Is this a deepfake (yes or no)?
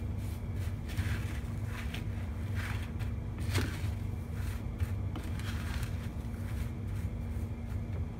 no